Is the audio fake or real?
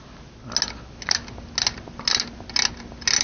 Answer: real